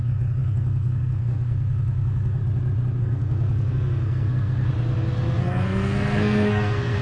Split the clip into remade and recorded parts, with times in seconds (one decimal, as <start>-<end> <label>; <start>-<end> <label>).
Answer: 0.0-2.4 remade; 2.4-3.0 recorded; 3.0-4.7 remade; 4.7-5.4 recorded; 5.4-7.0 remade